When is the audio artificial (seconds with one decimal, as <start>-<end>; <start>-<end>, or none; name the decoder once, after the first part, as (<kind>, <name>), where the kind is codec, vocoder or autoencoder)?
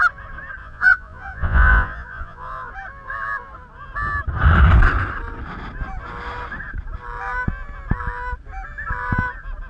0.6-2.7 (vocoder, Vocos)